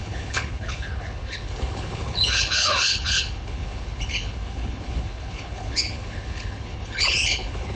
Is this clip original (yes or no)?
no